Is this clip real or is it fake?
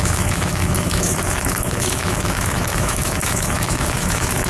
fake